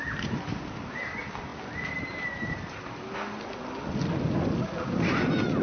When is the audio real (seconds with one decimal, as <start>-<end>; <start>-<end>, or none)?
0.0-5.6